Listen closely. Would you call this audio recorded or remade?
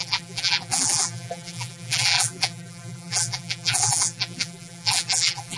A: remade